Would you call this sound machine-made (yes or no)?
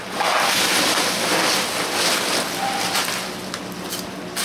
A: no